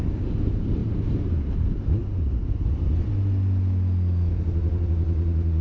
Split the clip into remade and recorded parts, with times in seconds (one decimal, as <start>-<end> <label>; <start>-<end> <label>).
0.0-0.8 recorded; 0.8-3.1 remade; 3.1-5.6 recorded